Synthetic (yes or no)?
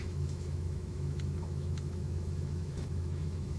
yes